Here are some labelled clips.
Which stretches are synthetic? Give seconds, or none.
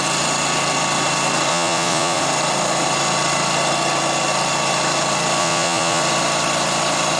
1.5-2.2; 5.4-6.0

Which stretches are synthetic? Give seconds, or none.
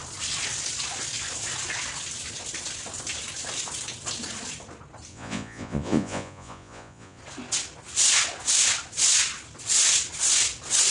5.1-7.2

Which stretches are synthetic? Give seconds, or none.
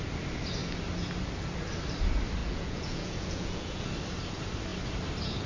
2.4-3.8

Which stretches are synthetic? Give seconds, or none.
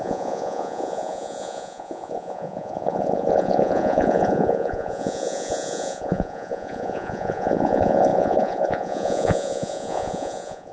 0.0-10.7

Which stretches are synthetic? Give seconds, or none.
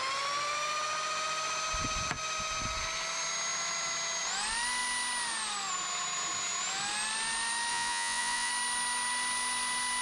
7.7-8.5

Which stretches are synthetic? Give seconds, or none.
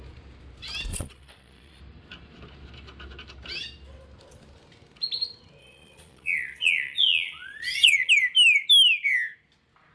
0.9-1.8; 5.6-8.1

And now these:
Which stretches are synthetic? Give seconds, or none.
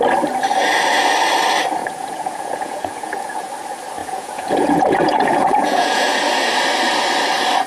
1.8-3.5; 4.0-6.1